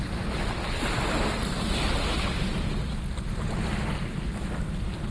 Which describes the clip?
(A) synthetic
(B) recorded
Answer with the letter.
B